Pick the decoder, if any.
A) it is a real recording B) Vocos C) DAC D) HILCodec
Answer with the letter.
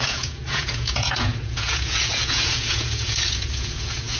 B